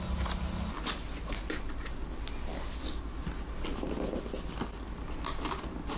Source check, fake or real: real